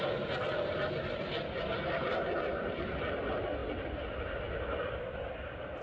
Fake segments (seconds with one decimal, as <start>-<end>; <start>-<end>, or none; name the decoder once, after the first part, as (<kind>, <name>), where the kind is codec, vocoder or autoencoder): 2.6-3.2 (vocoder, BigVGAN v2); 3.6-5.8